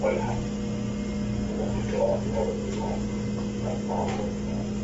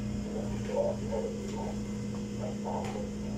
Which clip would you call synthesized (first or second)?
second